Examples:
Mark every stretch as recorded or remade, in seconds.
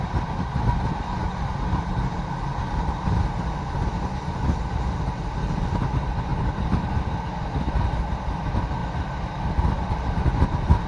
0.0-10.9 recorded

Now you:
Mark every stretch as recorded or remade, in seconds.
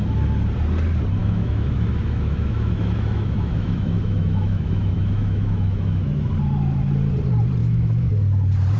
0.0-1.2 recorded; 1.2-6.3 remade; 6.3-7.6 recorded; 7.6-8.1 remade; 8.1-8.8 recorded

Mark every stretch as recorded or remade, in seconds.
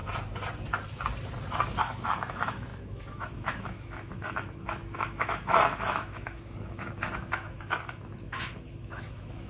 0.0-1.8 recorded; 1.8-9.5 remade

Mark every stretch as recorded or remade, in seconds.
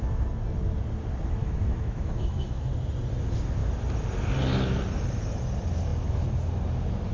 0.0-1.4 recorded; 1.4-2.7 remade; 2.7-7.1 recorded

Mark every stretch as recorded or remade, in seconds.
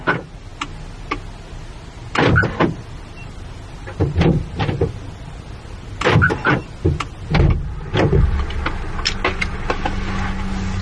0.0-10.8 recorded